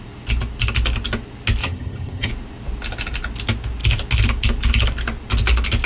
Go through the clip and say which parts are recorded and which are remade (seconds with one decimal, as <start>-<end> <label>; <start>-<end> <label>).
0.0-1.6 recorded; 1.6-2.3 remade; 2.3-5.9 recorded